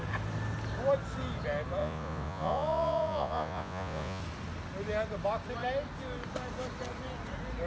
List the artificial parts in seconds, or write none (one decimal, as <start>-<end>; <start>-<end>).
1.8-4.2